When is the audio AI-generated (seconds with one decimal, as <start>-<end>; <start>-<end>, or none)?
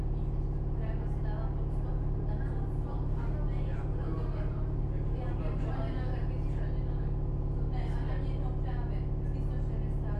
1.9-6.2